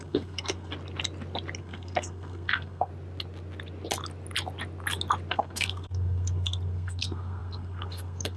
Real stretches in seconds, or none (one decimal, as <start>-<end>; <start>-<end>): 0.7-1.6; 2.9-5.3